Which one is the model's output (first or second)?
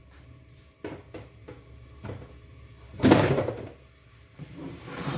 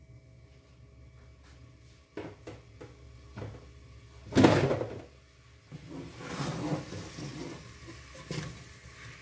first